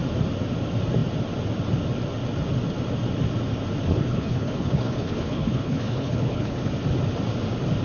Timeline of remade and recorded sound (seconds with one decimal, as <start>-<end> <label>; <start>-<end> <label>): 0.0-3.9 recorded; 3.9-6.7 remade; 6.7-7.8 recorded